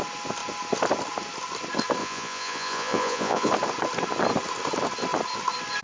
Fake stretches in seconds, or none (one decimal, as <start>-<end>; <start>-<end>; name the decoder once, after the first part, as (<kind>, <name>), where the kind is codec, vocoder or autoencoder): 2.0-3.5 (vocoder, Vocos)